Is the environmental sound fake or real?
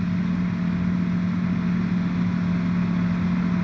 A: real